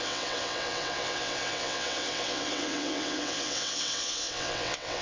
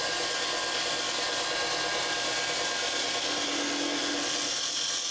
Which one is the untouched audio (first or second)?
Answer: second